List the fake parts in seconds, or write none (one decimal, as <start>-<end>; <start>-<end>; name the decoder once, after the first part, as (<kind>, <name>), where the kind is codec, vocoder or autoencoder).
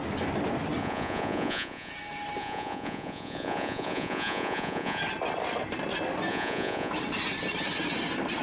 0.8-1.9 (vocoder, Vocos); 2.4-5.0; 6.3-6.9